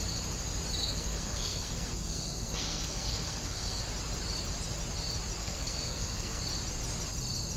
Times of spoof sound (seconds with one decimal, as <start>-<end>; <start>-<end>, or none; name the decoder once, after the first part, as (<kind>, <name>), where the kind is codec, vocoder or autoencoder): 0.8-3.8 (codec, SNAC); 5.4-6.4